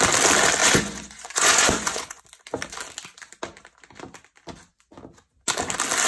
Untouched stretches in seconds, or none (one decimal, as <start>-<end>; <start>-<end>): 0.0-0.6; 2.2-6.1